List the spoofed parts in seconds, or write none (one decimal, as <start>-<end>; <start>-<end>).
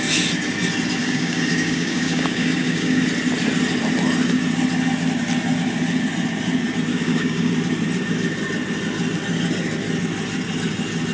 1.0-3.0; 6.9-7.5